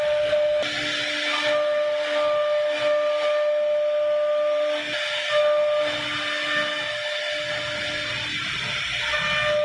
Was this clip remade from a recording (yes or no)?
no